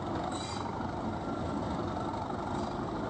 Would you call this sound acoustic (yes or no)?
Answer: yes